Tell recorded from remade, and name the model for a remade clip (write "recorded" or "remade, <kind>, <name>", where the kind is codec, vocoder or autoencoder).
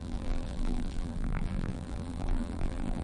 remade, vocoder, BigVGAN v2